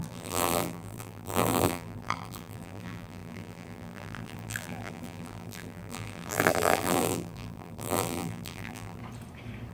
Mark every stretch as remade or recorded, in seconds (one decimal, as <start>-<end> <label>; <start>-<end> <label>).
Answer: 0.0-9.0 remade; 9.0-9.7 recorded